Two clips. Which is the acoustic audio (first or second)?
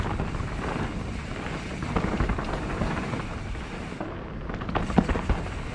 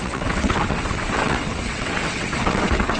first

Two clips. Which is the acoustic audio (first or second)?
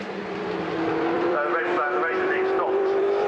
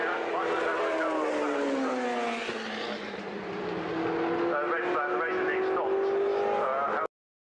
second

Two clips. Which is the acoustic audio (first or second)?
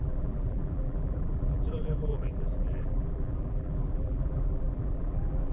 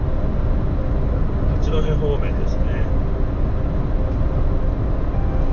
second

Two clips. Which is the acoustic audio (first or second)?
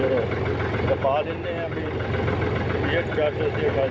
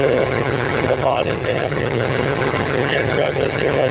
first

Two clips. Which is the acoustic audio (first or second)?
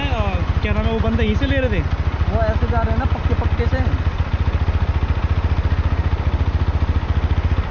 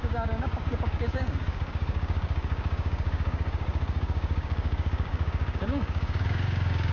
first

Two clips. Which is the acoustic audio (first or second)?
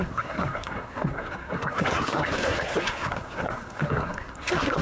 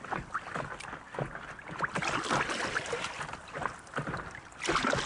second